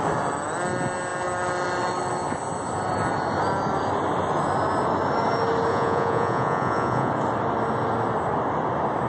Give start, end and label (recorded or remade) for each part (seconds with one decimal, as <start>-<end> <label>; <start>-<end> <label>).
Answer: 0.0-5.7 recorded; 5.7-7.1 remade; 7.1-9.1 recorded